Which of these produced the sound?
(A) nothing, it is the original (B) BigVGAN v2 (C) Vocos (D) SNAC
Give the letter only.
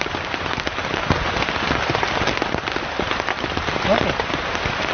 A